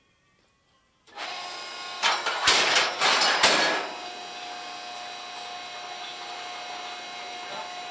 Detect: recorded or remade recorded